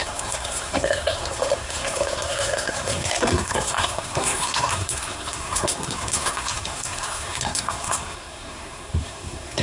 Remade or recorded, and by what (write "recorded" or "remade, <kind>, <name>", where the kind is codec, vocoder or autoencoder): remade, codec, SNAC